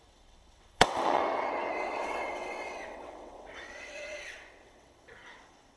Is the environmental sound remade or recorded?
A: remade